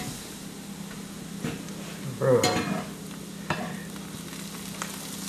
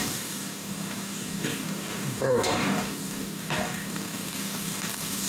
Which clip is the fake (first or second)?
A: second